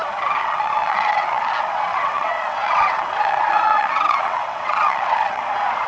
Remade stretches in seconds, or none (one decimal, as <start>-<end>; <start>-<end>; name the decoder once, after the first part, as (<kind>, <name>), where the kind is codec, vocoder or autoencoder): 0.4-1.5 (vocoder, WaveNeXt); 1.9-5.4